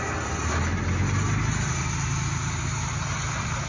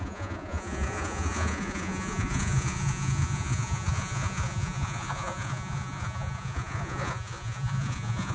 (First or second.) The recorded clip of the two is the first